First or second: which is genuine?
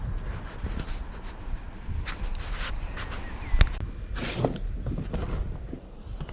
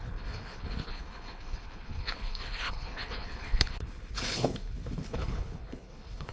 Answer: first